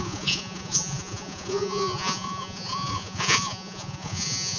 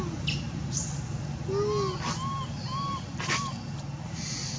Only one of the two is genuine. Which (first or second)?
second